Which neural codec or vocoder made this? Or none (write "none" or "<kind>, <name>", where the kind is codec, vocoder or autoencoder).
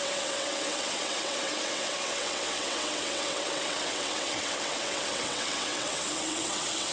vocoder, WaveNeXt